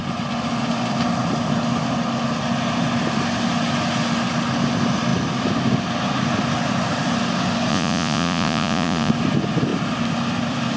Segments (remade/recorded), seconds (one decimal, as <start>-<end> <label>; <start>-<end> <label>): 0.0-7.7 recorded; 7.7-9.1 remade; 9.1-10.8 recorded

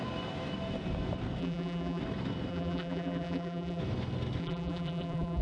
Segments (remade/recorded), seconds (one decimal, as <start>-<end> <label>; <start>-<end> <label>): 0.0-1.4 recorded; 1.4-2.0 remade; 2.0-2.5 recorded; 2.5-3.8 remade; 3.8-4.4 recorded; 4.4-5.4 remade

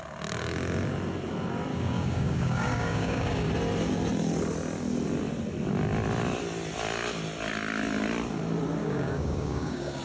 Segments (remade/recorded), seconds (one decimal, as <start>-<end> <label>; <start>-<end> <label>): 0.0-1.7 recorded; 1.7-3.5 remade; 3.5-8.8 recorded; 8.8-10.0 remade

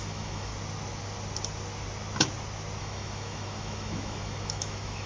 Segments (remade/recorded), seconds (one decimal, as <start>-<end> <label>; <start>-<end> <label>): 0.0-0.5 remade; 0.5-2.8 recorded; 2.8-5.1 remade

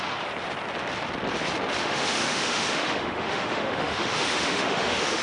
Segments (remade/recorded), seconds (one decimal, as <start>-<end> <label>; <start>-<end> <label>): 0.0-1.8 recorded; 1.8-5.2 remade